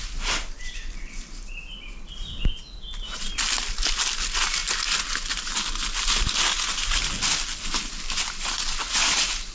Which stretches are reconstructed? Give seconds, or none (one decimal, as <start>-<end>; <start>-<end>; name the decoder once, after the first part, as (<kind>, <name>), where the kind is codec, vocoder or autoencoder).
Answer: none